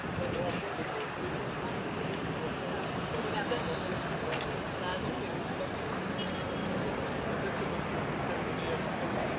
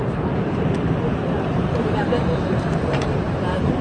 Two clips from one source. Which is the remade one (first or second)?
second